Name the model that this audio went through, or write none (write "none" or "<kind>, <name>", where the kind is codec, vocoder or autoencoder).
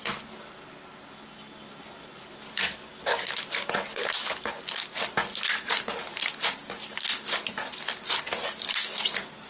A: none